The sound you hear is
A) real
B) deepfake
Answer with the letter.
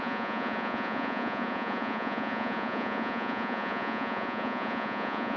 B